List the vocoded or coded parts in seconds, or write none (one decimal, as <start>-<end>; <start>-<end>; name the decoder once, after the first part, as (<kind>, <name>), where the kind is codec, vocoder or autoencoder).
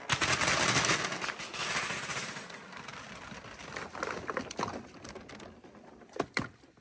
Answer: none